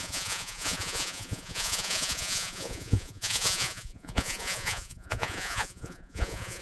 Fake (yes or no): yes